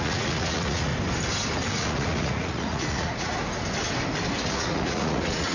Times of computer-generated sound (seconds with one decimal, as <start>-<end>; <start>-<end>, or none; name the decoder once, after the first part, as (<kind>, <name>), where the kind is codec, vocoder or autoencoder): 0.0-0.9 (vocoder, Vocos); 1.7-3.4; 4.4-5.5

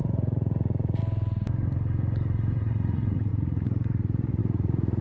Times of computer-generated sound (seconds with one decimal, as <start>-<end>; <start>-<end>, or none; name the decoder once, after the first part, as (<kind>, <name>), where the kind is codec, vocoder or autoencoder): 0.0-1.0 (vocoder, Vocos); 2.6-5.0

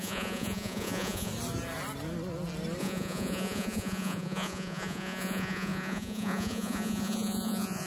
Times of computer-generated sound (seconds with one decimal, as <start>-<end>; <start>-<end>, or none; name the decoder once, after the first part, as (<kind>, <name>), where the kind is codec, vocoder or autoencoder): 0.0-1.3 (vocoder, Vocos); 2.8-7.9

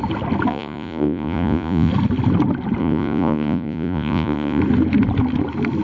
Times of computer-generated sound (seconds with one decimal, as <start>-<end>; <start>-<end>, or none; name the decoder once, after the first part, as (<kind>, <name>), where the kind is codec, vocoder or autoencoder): 0.5-1.9 (vocoder, Vocos); 2.8-4.6